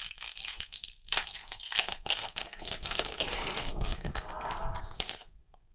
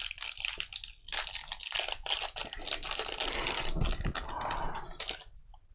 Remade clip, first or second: first